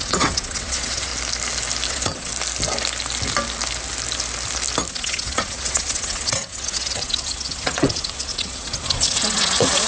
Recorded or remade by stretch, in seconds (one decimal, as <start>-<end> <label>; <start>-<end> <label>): 0.0-1.1 remade; 1.1-1.9 recorded; 1.9-2.3 remade; 2.3-4.9 recorded; 4.9-9.9 remade